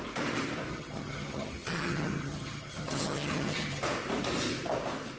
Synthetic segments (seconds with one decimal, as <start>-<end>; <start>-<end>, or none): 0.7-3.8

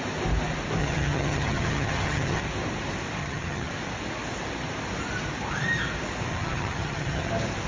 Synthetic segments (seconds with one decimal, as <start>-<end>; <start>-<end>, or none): 0.8-2.4; 3.2-3.7; 6.3-7.3

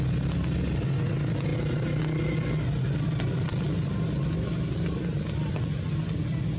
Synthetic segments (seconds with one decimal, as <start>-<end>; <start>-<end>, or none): none

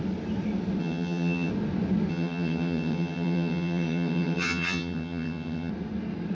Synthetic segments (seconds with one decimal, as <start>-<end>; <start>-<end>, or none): 0.8-1.5; 2.1-5.7

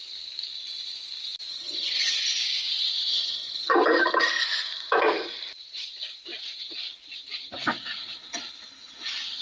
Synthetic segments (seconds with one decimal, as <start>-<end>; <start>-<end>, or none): 1.5-2.2; 3.1-4.4